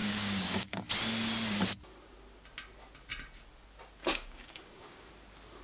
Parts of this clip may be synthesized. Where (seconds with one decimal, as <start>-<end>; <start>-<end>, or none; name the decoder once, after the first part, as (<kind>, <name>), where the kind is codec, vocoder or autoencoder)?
0.0-0.8 (codec, DAC); 4.0-5.1